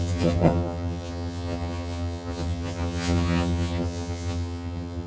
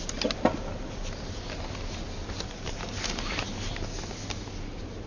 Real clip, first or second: second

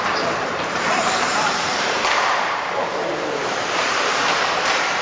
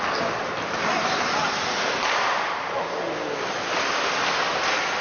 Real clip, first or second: second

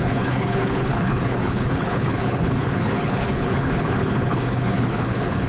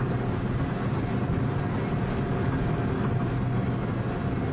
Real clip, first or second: second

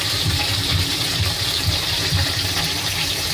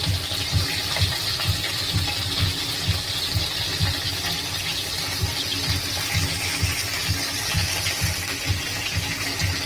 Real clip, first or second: second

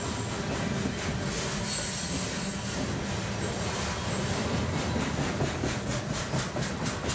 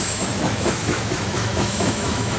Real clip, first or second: first